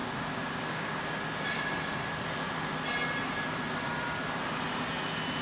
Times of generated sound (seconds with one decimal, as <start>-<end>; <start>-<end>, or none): 0.0-1.0